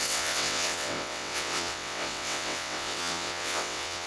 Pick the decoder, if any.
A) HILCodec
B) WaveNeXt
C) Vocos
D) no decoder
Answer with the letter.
B